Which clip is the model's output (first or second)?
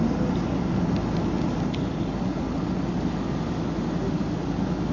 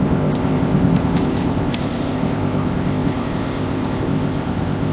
second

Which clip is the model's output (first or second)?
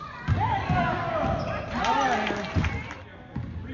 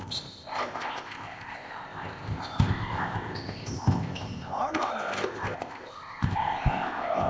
second